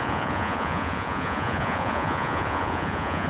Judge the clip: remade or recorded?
remade